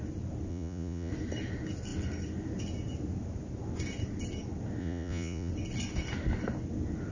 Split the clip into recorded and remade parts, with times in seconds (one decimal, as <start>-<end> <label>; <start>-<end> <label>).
0.0-0.5 recorded; 0.5-1.1 remade; 1.1-4.8 recorded; 4.8-5.5 remade; 5.5-7.1 recorded